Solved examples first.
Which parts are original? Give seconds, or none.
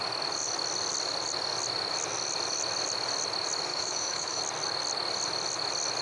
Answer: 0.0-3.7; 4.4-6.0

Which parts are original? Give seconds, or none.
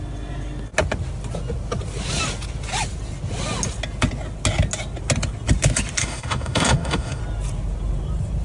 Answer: 0.0-6.0; 7.2-8.4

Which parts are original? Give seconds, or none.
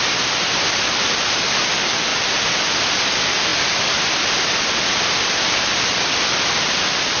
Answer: 0.0-7.2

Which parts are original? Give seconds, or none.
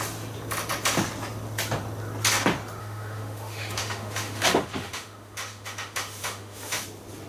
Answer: 0.0-2.8; 6.8-7.3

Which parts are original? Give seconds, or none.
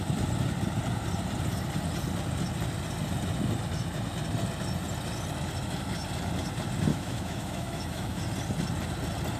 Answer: 0.0-6.9; 8.2-9.4